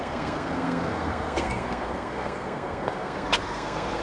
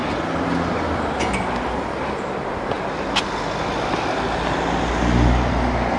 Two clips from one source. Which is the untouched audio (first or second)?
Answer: second